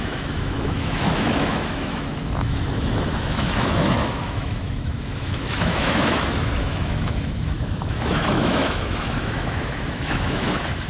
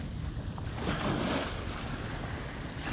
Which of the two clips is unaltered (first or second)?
second